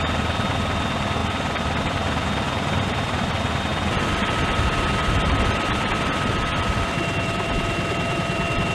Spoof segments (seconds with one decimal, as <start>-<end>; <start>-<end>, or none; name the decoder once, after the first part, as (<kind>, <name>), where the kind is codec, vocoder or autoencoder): 1.2-3.3 (vocoder, BigVGAN v2); 3.7-4.6; 5.0-8.7